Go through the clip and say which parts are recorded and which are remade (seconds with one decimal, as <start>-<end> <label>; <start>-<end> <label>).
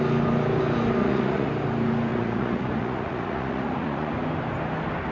0.0-1.0 recorded; 1.0-1.5 remade; 1.5-2.1 recorded; 2.1-4.1 remade; 4.1-5.1 recorded